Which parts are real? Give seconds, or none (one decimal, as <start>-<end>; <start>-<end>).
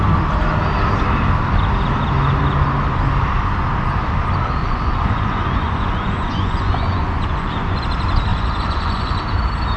0.0-4.6; 7.8-8.3; 9.2-9.8